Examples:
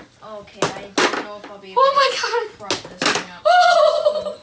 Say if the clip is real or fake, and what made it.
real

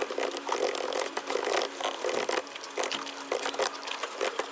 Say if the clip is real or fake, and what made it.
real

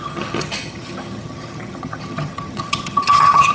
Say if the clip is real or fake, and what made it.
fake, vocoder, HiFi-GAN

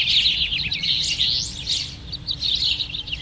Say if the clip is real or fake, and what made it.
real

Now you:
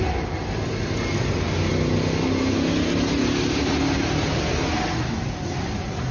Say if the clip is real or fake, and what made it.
real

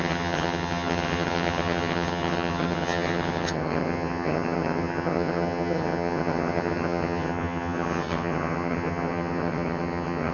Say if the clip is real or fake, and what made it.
fake, vocoder, HiFi-GAN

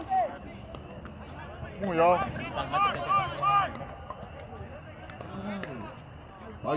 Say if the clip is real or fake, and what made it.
real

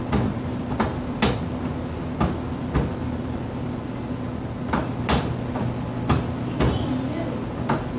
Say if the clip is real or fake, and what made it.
real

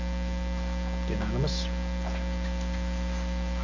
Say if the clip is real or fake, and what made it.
real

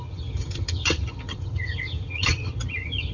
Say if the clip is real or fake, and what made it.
fake, vocoder, HiFi-GAN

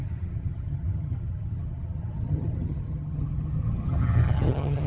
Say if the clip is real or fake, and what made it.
fake, vocoder, HiFi-GAN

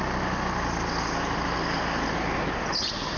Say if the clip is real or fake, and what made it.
real